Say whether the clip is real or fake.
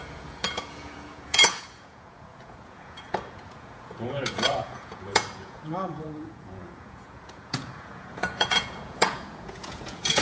fake